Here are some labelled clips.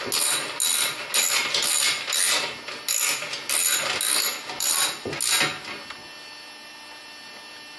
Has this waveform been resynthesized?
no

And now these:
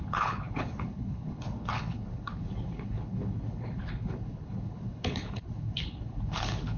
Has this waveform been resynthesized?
yes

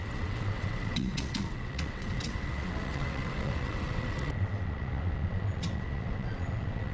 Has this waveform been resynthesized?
yes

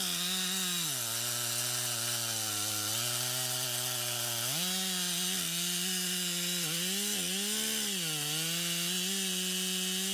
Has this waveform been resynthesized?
no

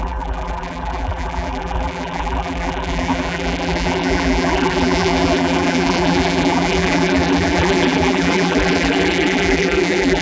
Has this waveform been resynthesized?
yes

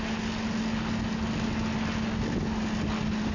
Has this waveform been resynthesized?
no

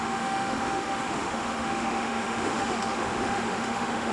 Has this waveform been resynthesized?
yes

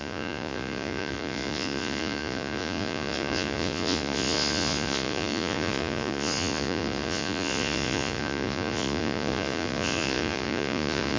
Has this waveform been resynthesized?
yes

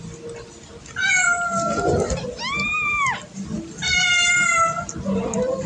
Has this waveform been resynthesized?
no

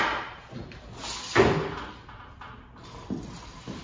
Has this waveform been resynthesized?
no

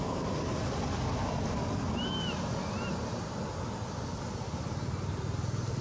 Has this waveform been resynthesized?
no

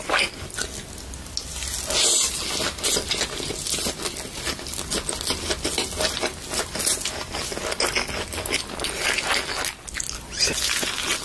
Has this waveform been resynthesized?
no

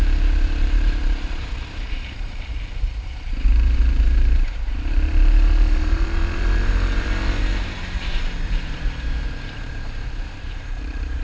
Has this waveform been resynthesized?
yes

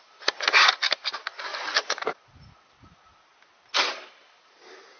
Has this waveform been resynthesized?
no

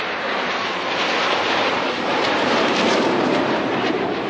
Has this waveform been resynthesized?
yes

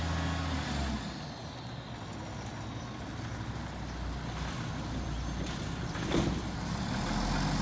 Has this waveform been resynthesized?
no